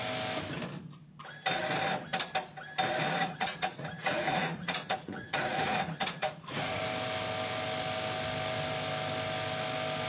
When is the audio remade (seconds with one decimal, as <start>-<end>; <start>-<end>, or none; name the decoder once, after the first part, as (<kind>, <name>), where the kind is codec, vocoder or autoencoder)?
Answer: 3.2-6.8 (vocoder, Vocos)